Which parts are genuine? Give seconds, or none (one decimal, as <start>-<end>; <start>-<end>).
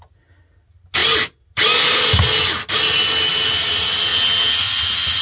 0.0-5.2